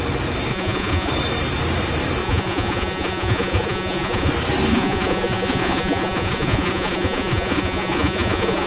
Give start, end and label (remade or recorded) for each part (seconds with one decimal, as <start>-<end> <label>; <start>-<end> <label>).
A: 0.0-0.5 recorded; 0.5-1.1 remade; 1.1-2.2 recorded; 2.2-4.3 remade; 4.3-4.7 recorded; 4.7-8.7 remade